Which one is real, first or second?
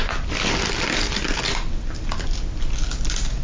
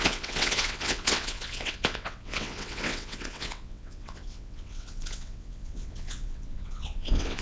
first